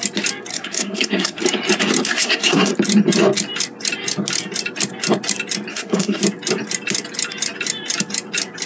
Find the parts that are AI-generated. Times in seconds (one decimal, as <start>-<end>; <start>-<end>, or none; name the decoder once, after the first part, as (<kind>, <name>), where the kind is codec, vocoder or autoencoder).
0.5-1.4 (codec, SNAC); 2.1-2.7; 5.7-6.2

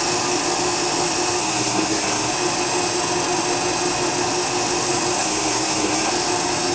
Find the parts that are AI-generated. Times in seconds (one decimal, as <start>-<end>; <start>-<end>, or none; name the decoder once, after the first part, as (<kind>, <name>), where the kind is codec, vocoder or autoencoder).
1.4-2.3 (codec, SNAC); 5.2-6.1

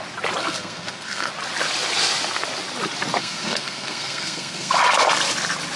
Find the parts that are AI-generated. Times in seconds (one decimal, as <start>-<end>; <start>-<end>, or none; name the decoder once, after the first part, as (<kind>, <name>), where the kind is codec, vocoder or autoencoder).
0.4-1.3 (codec, SNAC); 3.2-4.7